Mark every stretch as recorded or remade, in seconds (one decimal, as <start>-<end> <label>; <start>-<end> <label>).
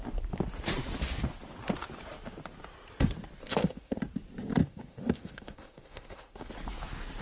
0.0-3.4 recorded; 3.4-4.0 remade; 4.0-4.6 recorded; 4.6-6.5 remade; 6.5-7.2 recorded